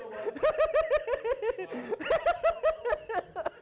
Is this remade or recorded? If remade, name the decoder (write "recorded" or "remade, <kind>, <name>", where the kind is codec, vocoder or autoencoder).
recorded